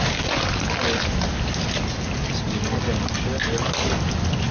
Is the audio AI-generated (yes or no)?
no